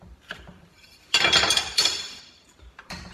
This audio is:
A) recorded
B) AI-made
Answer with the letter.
B